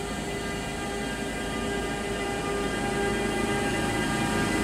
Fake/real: real